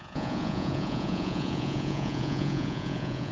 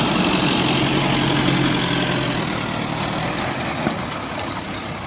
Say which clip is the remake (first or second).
first